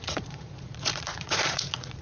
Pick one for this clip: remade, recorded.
remade